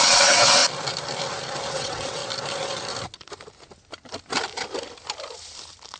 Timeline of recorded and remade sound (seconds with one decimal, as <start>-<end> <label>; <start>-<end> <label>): 0.0-0.6 remade; 0.6-1.7 recorded; 1.7-2.2 remade; 2.2-6.0 recorded